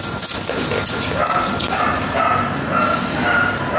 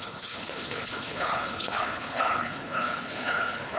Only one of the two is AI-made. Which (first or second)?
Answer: second